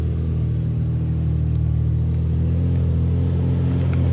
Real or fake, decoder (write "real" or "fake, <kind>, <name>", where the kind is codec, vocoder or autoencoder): real